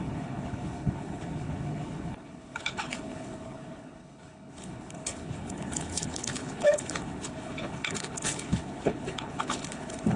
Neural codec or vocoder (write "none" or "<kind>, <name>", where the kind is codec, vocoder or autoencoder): codec, HILCodec